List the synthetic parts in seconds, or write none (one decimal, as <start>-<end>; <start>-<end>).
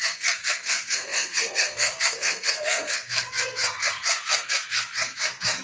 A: 0.0-5.6